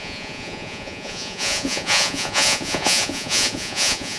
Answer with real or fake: fake